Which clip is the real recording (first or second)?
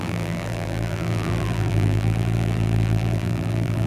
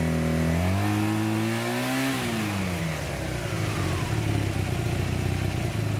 second